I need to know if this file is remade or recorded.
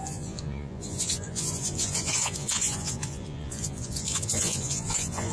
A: remade